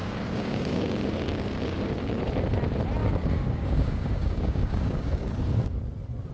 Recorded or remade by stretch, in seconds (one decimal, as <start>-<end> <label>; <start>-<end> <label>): 0.0-2.2 remade; 2.2-3.0 recorded; 3.0-5.3 remade; 5.3-6.3 recorded